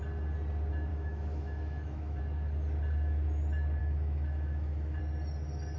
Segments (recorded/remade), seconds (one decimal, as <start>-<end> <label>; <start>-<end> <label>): 0.0-0.9 recorded; 0.9-2.2 remade; 2.2-3.8 recorded; 3.8-5.0 remade; 5.0-5.8 recorded